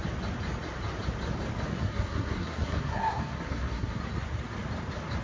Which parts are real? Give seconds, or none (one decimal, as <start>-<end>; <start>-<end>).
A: 0.0-1.7; 4.0-5.2

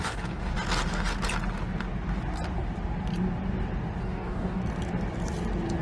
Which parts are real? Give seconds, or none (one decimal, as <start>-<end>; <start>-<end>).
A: 0.5-4.0; 4.6-5.8

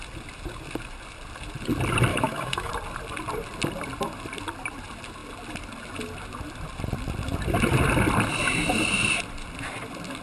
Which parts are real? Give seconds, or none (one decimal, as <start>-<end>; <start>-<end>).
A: 0.0-2.1; 2.7-10.2

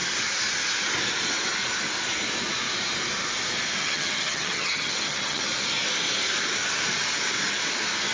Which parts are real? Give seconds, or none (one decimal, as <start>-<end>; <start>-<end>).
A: 0.0-3.8; 5.4-8.1